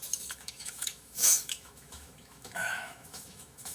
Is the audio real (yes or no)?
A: no